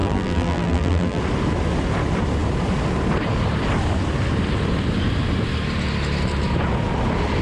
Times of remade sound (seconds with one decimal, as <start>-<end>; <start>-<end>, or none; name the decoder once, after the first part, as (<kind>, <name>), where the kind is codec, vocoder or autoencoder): 0.0-1.2 (vocoder, BigVGAN v2)

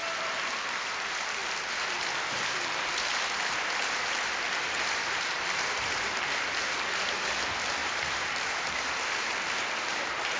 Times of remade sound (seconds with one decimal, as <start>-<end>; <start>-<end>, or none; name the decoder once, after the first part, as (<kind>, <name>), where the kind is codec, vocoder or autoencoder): 7.8-9.5 (vocoder, BigVGAN v2)

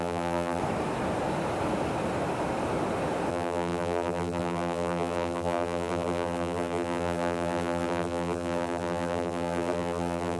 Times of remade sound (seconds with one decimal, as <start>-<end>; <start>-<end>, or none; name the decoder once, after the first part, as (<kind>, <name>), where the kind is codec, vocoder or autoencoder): 0.0-0.6 (vocoder, BigVGAN v2); 3.3-10.4

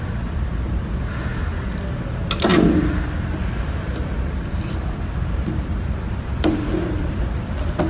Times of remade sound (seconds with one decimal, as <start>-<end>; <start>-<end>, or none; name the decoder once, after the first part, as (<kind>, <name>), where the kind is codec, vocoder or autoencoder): 2.5-7.2 (vocoder, BigVGAN v2)

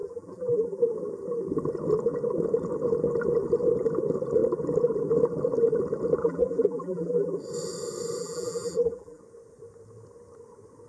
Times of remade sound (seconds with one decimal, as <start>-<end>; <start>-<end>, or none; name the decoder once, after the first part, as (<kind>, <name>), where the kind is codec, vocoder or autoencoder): 0.0-0.8 (vocoder, BigVGAN v2); 6.2-7.4; 8.2-9.2